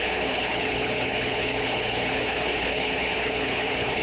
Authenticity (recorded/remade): remade